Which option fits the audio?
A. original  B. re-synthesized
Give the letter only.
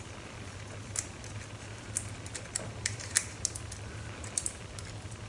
A